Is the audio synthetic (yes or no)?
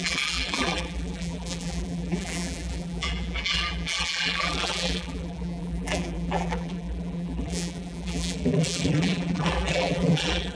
yes